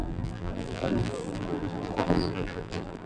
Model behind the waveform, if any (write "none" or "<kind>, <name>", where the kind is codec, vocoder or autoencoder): vocoder, BigVGAN v2